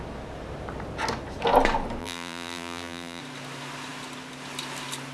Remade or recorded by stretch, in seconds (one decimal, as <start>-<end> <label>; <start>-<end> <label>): 0.0-2.0 recorded; 2.0-3.2 remade; 3.2-5.1 recorded